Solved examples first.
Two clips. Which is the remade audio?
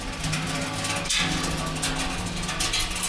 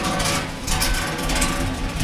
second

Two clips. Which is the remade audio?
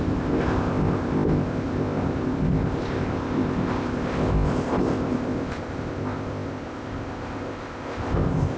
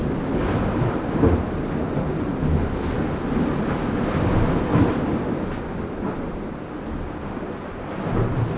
first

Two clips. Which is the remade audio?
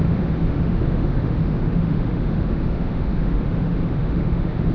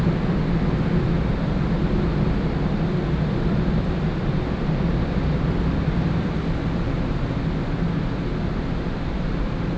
first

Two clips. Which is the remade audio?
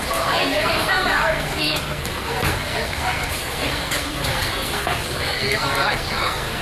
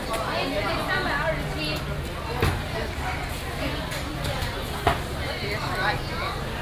first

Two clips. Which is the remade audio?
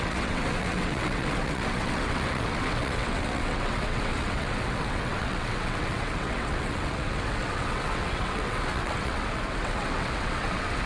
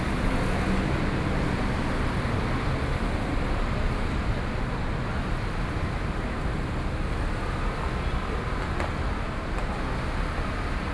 first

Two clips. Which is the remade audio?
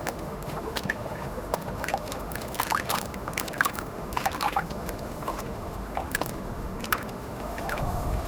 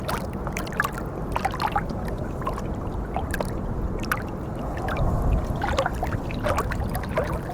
first